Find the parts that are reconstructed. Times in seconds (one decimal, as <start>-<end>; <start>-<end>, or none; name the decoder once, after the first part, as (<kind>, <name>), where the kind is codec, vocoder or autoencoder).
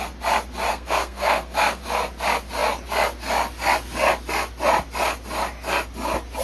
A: 0.7-1.8 (codec, SNAC)